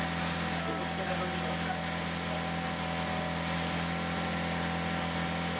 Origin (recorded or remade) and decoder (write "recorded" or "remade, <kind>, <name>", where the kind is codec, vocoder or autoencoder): recorded